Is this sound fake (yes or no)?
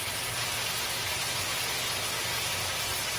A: no